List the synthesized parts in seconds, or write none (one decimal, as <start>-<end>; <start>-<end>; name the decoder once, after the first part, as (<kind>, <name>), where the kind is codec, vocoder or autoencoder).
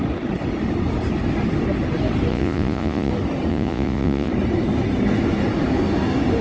2.3-3.1 (vocoder, Vocos); 3.5-4.3